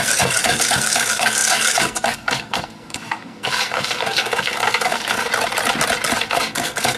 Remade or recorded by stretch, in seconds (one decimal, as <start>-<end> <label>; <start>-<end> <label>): 0.0-5.3 remade; 5.3-6.2 recorded; 6.2-7.0 remade